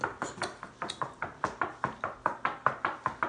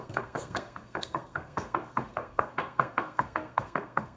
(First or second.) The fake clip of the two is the second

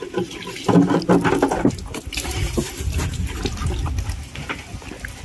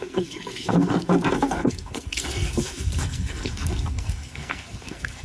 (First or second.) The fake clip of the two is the second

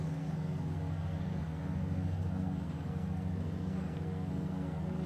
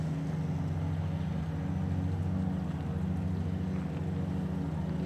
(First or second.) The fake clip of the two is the first